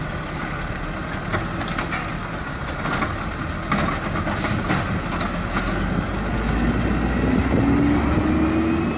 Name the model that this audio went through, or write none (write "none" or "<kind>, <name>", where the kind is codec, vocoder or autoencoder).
none